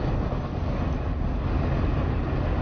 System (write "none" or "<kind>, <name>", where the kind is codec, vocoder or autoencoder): none